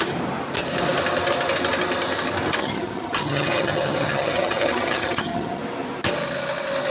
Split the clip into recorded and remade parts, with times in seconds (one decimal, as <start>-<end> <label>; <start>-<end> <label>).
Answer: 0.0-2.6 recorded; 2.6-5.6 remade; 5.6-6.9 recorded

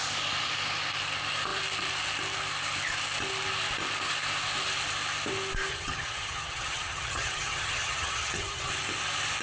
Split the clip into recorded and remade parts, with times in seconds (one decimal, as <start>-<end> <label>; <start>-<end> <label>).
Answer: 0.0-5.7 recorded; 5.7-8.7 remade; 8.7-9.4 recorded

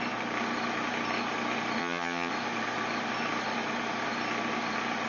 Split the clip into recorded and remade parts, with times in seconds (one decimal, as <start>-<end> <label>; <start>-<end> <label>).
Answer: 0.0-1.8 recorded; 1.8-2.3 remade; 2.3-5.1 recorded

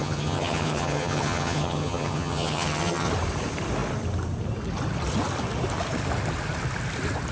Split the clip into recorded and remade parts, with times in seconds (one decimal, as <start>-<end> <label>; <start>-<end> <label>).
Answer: 0.0-3.1 remade; 3.1-7.3 recorded